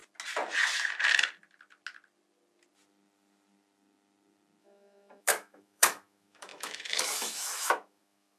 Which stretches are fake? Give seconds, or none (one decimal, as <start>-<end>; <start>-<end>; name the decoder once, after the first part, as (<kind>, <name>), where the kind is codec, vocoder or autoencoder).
4.6-8.4 (autoencoder, DAC-VAE)